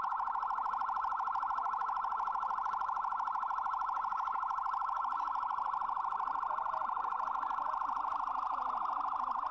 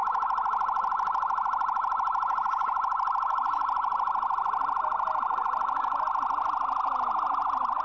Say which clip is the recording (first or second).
second